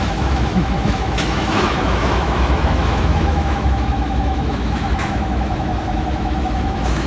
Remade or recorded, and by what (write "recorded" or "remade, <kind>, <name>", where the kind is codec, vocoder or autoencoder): remade, autoencoder, DAC-VAE